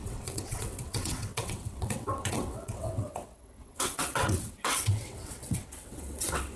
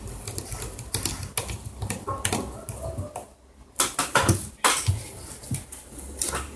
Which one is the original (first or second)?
second